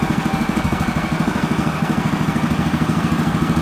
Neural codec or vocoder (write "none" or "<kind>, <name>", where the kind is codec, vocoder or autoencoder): codec, SNAC